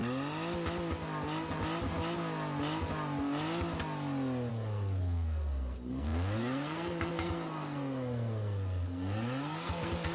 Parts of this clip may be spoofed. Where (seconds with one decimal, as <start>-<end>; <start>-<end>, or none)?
4.5-10.1